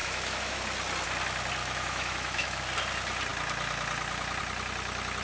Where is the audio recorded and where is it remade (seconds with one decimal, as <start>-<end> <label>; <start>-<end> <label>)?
0.0-0.6 remade; 0.6-1.6 recorded; 1.6-2.6 remade; 2.6-5.2 recorded